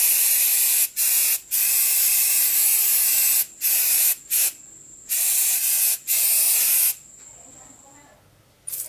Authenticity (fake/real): real